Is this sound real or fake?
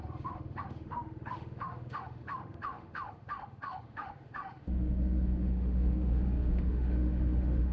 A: fake